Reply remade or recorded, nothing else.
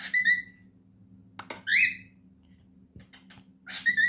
recorded